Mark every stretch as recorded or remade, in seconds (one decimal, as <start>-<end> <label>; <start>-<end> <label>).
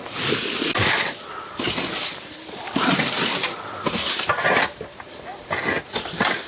0.0-6.5 recorded